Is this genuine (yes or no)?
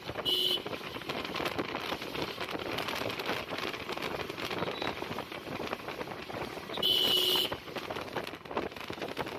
yes